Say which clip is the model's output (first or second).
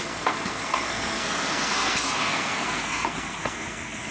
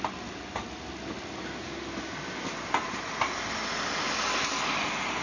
first